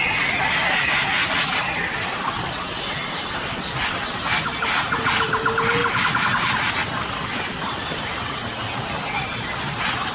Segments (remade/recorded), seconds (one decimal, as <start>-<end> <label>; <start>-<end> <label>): 0.0-10.1 recorded